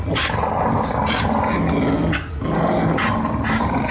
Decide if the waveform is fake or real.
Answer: real